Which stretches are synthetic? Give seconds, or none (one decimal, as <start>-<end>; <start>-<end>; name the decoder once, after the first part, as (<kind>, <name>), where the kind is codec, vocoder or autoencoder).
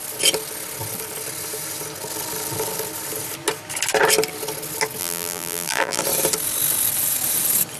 5.0-6.0 (vocoder, BigVGAN v2)